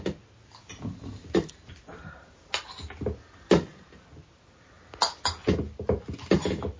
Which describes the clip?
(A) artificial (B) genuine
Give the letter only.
B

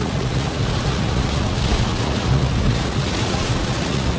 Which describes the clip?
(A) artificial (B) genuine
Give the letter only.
A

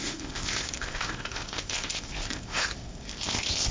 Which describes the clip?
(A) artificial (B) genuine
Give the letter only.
A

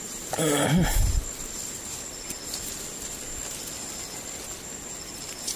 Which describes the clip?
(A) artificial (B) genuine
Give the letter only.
B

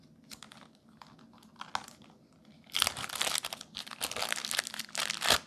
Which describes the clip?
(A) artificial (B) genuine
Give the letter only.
B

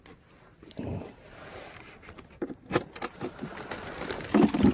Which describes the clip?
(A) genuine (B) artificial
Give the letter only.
A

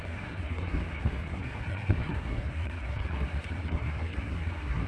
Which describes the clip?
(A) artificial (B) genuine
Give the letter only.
A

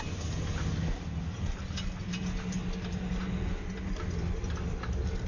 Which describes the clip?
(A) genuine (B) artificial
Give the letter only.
A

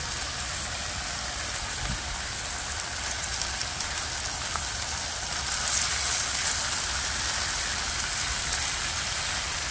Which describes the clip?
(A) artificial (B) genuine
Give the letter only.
B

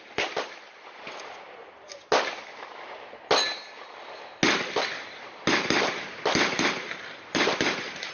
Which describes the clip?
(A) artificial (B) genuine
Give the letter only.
B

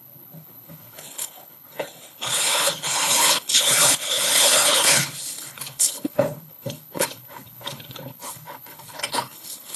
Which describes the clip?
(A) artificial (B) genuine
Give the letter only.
A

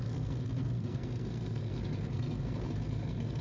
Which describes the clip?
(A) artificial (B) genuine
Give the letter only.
A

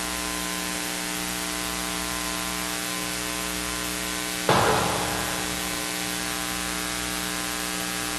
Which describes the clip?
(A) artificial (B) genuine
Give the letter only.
B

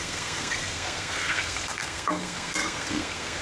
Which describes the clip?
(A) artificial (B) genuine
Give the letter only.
A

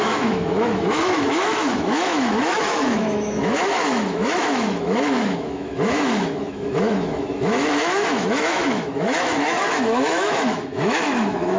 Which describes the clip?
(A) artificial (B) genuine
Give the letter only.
A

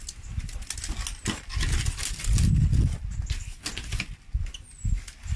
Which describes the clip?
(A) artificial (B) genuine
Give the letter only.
B